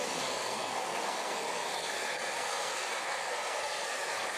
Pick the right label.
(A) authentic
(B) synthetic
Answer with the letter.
B